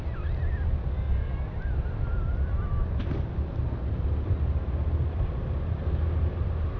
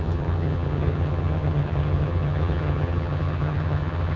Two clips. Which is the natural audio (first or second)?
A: first